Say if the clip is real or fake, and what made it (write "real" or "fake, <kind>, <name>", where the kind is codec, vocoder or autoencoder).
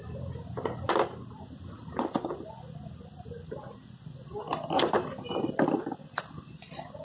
real